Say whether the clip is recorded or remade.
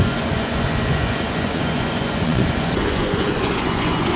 remade